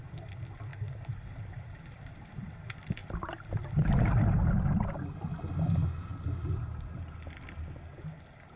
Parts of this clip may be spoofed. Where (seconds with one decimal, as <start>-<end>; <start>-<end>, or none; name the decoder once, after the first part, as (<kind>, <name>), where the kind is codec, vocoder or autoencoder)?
0.7-2.5 (vocoder, BigVGAN v2); 3.0-4.0